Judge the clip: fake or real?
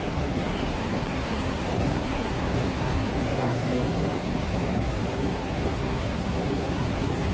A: fake